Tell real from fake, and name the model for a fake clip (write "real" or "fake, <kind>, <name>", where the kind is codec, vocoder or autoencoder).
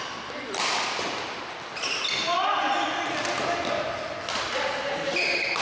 real